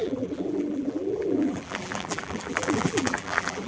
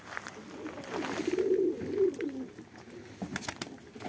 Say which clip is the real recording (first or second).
second